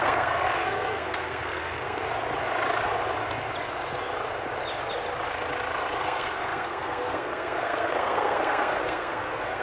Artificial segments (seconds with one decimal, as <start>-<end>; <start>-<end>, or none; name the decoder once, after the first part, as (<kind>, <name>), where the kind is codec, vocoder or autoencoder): 0.0-2.0 (codec, SNAC); 6.0-9.6